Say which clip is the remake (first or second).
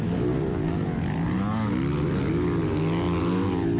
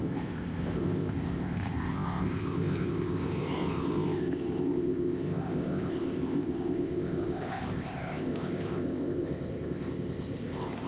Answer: second